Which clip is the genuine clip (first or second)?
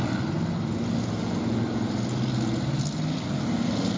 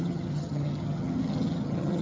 first